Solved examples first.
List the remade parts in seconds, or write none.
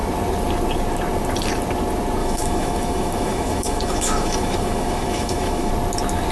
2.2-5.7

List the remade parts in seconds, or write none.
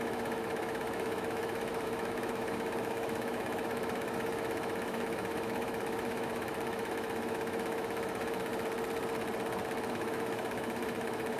0.0-8.5; 9.9-11.4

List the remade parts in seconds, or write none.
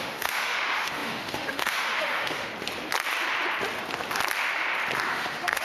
0.0-2.5; 5.1-5.6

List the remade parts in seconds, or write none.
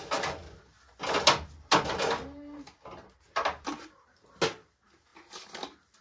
none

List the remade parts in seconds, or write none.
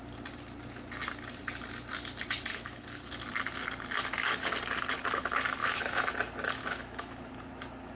2.5-3.1; 5.6-6.1; 6.6-7.3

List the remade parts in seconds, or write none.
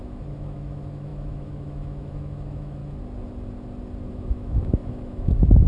0.0-2.8; 4.1-5.7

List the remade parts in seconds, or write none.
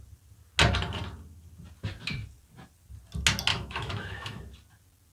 3.5-4.4